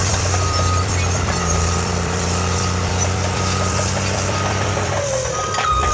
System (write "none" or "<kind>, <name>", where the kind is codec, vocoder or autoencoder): vocoder, BigVGAN v2